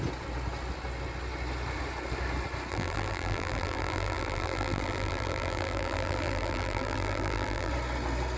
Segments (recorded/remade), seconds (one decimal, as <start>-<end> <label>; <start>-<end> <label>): 0.0-2.7 recorded; 2.7-7.7 remade; 7.7-8.4 recorded

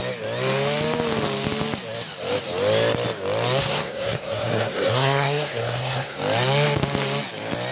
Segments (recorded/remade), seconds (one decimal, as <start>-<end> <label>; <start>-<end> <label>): 0.0-3.6 recorded; 3.6-6.2 remade; 6.2-7.7 recorded

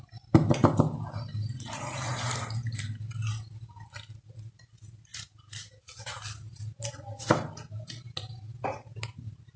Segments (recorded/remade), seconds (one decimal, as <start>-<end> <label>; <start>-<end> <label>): 0.0-9.6 recorded

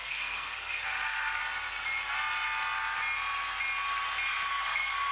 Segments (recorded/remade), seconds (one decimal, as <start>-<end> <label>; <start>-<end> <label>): 0.0-1.4 remade; 1.4-4.5 recorded; 4.5-5.1 remade

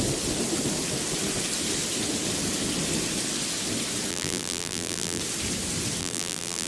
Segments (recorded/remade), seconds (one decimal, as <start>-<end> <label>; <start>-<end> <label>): 0.0-4.1 recorded; 4.1-5.2 remade; 5.2-6.0 recorded; 6.0-6.7 remade

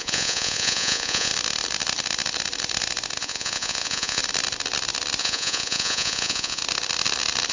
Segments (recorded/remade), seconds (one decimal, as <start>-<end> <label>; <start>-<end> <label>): 0.0-1.3 remade; 1.3-3.2 recorded; 3.2-4.2 remade; 4.2-5.2 recorded; 5.2-6.6 remade; 6.6-7.5 recorded

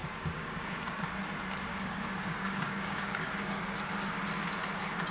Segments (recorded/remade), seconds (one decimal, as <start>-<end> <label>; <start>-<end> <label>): 0.0-1.0 remade; 1.0-1.7 recorded; 1.7-4.1 remade; 4.1-5.1 recorded